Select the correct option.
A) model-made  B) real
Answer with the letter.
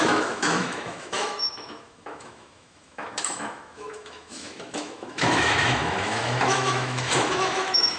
A